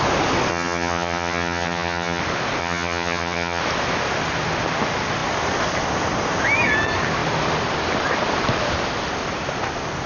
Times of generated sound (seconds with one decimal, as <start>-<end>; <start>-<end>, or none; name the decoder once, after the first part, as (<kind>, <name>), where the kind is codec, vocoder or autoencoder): 0.5-2.2 (vocoder, HiFi-GAN); 2.6-3.6